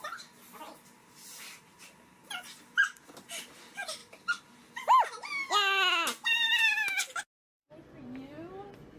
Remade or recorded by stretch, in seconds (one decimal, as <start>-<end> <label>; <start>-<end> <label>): 0.0-1.0 recorded; 1.0-2.6 remade; 2.6-4.0 recorded; 4.0-4.7 remade; 4.7-9.0 recorded